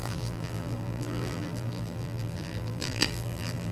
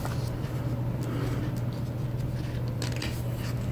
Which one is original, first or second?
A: second